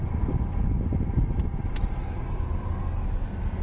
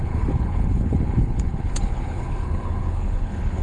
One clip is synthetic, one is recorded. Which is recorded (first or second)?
first